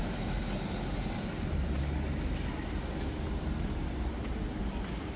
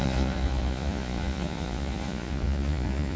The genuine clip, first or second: first